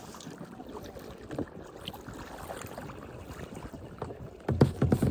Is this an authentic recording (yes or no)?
yes